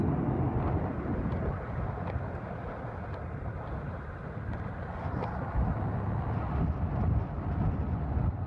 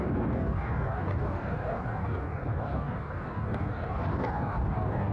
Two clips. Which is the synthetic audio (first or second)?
second